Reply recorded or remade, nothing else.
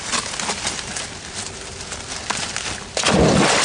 recorded